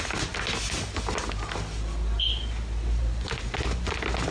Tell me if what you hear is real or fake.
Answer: real